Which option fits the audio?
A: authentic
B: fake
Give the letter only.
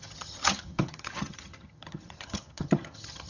B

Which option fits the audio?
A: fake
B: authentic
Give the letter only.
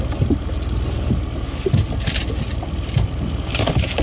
B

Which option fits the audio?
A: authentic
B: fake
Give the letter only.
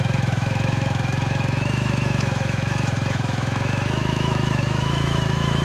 B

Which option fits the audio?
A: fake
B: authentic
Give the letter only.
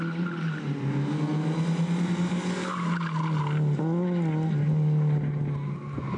B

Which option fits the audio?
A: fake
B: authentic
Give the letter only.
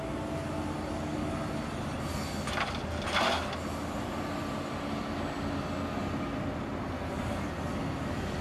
B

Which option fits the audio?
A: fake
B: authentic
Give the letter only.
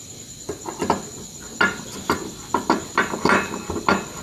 B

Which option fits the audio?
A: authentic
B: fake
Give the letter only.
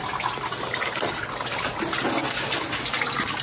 A